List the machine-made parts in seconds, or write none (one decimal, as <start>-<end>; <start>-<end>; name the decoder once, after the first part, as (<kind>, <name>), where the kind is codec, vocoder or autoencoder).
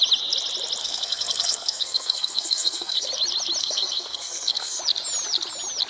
0.8-3.1 (codec, SNAC); 3.6-4.8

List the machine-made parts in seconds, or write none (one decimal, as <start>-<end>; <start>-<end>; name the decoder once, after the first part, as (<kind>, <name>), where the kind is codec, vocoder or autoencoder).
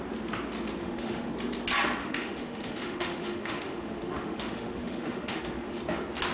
0.8-1.3 (autoencoder, DAC-VAE); 2.0-5.8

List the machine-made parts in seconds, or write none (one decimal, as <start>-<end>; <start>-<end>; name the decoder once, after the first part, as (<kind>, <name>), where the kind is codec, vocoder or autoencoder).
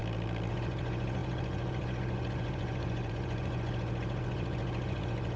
0.5-5.4 (vocoder, Vocos)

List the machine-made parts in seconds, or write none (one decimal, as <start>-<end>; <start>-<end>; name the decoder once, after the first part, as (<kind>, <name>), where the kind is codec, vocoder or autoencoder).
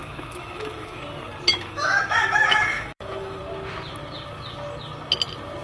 0.0-1.0 (autoencoder, DAC-VAE); 1.5-3.4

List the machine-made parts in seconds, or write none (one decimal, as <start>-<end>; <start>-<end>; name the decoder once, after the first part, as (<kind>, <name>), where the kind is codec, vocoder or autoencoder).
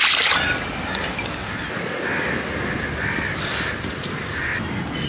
none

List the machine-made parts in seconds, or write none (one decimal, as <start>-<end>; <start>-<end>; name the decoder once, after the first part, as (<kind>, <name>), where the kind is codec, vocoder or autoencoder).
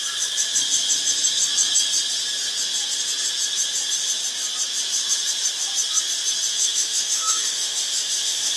6.5-8.6 (autoencoder, DAC-VAE)